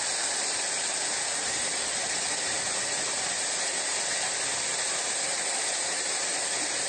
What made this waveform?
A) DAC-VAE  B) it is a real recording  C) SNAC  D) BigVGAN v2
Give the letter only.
B